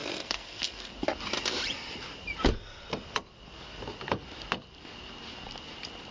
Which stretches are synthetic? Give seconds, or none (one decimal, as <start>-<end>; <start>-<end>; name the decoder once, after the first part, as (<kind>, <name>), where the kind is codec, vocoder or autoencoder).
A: 0.0-0.9 (codec, SNAC)